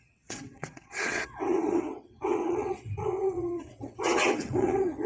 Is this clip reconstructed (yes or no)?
yes